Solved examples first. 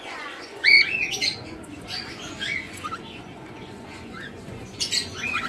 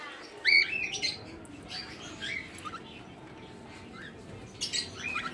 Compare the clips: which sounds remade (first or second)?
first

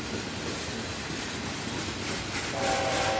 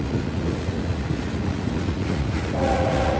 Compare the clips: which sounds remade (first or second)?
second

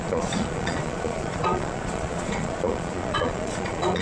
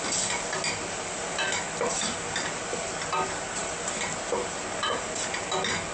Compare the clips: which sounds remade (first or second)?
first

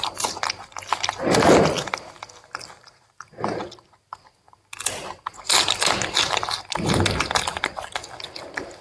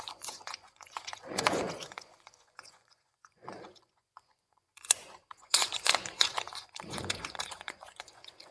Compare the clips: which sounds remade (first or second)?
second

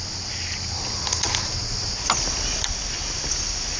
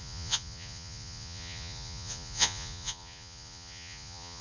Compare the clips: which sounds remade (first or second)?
second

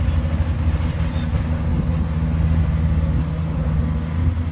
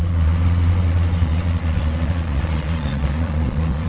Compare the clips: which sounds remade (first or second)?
second